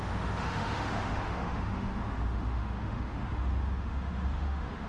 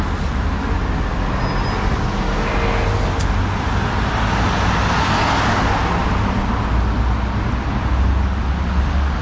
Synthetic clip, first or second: first